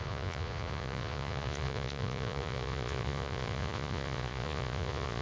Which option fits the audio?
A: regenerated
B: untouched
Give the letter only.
A